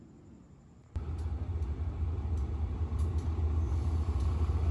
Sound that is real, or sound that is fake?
real